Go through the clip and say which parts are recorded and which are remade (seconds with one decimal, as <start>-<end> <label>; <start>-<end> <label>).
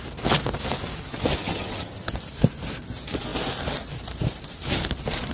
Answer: 0.0-1.4 recorded; 1.4-2.1 remade; 2.1-5.3 recorded